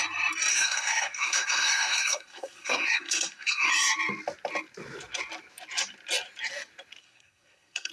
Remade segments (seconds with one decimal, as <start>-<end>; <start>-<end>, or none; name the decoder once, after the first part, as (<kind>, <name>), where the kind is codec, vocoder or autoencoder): 0.5-3.7 (codec, SNAC); 7.0-7.9